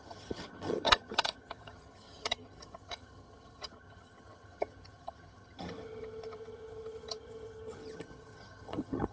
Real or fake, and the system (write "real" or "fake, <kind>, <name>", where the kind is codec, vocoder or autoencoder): fake, vocoder, HiFi-GAN